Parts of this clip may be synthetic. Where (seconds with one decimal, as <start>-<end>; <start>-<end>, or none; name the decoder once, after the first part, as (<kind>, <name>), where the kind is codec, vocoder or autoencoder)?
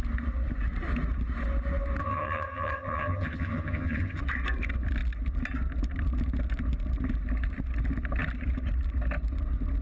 2.0-4.2 (vocoder, HiFi-GAN)